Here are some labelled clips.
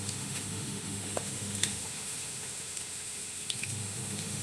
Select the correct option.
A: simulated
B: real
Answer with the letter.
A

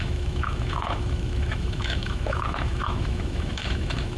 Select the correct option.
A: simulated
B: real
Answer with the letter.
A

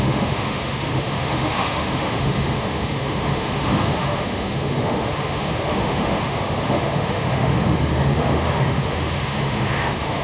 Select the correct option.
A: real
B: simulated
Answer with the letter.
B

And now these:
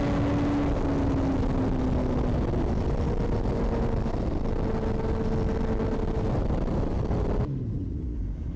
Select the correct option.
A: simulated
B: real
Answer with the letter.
B